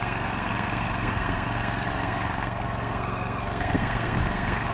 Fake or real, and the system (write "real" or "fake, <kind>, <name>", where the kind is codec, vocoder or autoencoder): fake, codec, SNAC